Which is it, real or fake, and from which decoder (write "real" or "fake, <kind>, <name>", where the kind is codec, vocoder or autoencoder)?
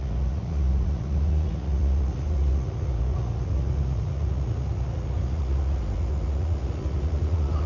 fake, vocoder, Vocos